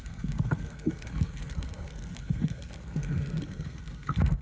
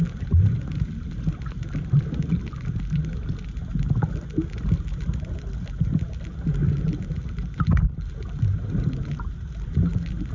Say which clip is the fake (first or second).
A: first